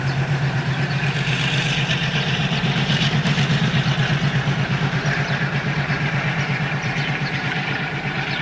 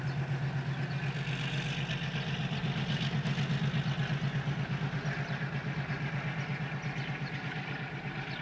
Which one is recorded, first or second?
second